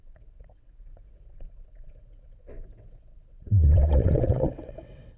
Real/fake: fake